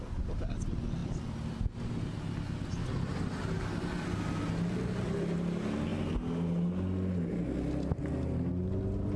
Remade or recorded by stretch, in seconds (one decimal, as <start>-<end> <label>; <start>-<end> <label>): 0.0-9.2 recorded